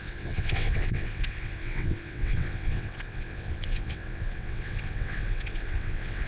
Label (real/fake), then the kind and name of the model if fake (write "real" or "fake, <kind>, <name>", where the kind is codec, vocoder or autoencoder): fake, vocoder, WaveNeXt